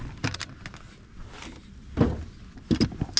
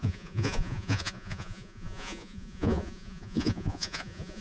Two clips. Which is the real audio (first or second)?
first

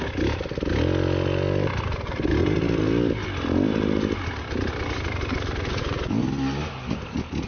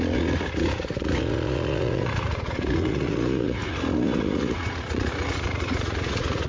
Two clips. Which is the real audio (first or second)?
first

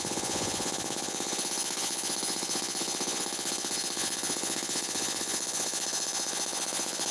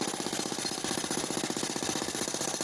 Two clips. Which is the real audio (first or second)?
second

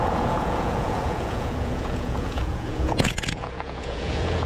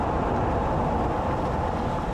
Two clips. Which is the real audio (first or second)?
second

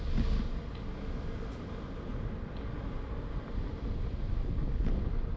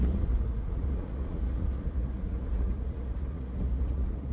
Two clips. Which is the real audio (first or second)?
first